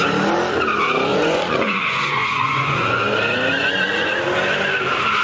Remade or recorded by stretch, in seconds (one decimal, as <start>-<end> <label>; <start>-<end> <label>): 0.0-1.1 recorded; 1.1-3.0 remade; 3.0-3.5 recorded; 3.5-4.1 remade; 4.1-5.2 recorded